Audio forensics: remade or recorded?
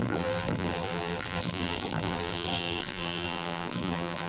remade